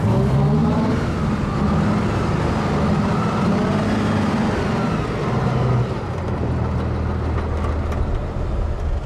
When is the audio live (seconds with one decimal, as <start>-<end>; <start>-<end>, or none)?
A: 0.0-0.6; 1.2-2.9; 3.8-9.1